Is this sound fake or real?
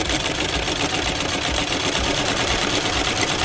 fake